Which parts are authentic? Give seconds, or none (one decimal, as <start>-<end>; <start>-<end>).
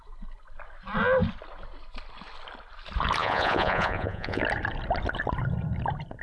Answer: 0.0-3.2; 4.4-6.2